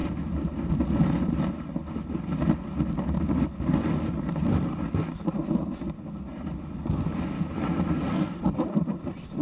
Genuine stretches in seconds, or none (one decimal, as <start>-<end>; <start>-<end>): 0.0-9.4